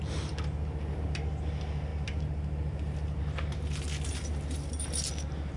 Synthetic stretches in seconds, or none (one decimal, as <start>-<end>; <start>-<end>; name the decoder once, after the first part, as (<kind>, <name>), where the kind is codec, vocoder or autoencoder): none